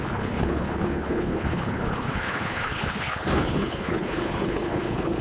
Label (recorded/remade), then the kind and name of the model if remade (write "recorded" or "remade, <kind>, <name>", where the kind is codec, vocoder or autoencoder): remade, codec, HILCodec